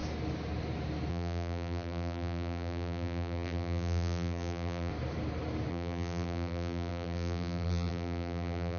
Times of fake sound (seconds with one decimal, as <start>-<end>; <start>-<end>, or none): 1.1-4.9; 5.7-8.8

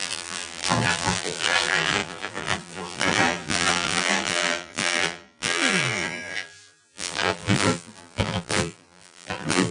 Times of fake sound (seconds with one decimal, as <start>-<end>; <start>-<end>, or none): 0.0-9.7